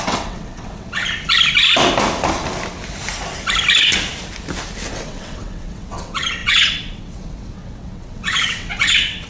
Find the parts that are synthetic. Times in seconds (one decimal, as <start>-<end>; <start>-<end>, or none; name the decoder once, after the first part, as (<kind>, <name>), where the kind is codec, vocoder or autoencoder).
0.0-1.0 (vocoder, WaveNeXt); 4.9-9.3